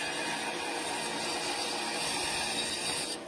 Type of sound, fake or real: real